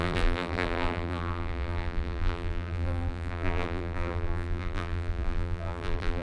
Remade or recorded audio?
remade